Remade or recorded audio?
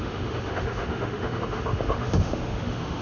remade